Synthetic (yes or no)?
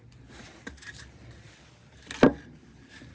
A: no